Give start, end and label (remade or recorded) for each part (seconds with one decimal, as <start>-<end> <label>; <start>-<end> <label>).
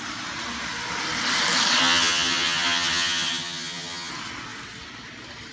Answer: 0.0-1.8 recorded; 1.8-4.1 remade; 4.1-5.5 recorded